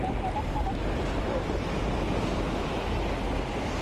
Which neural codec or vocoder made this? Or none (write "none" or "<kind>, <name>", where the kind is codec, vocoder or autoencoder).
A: none